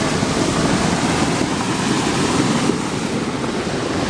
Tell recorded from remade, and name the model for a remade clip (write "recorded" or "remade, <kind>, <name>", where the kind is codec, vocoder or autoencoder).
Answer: recorded